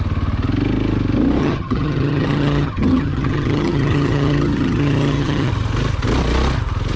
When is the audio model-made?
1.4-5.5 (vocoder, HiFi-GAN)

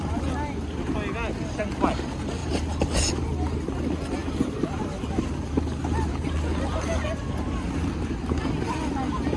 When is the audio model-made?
none

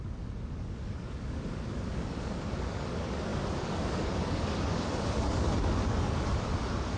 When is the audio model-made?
0.0-7.0 (codec, DAC)

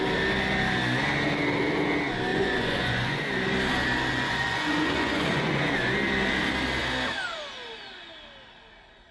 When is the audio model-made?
2.3-3.2 (vocoder, Vocos); 4.1-5.7

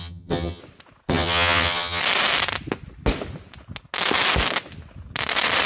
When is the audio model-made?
0.0-0.6 (vocoder, HiFi-GAN); 1.1-2.0